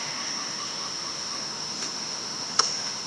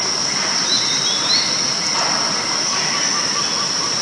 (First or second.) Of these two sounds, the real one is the second